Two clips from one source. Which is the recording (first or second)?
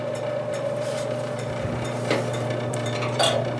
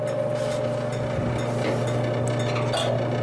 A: second